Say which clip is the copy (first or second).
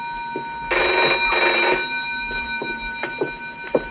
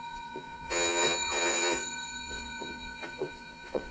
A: second